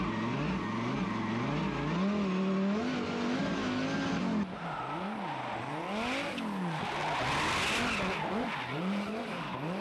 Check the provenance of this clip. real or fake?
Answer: real